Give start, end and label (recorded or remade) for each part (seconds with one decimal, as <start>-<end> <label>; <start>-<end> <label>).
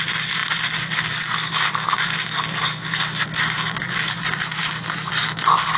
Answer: 0.0-5.8 recorded